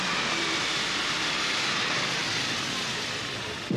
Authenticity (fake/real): real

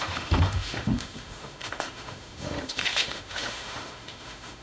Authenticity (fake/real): fake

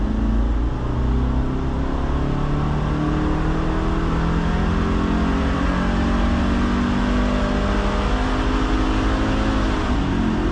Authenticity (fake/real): real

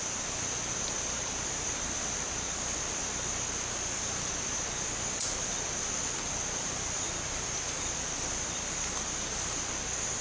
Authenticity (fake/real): real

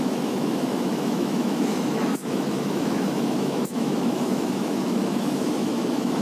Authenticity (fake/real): fake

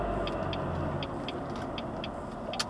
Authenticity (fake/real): real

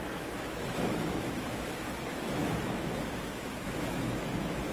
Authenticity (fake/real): fake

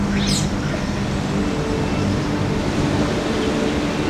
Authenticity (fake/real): real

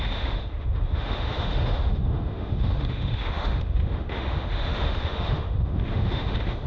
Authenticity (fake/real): fake